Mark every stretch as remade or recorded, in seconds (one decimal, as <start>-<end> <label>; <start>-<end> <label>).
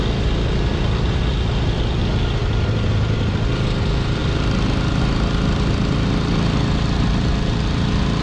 0.0-8.2 recorded